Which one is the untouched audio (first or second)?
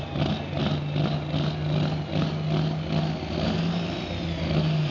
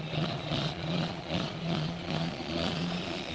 first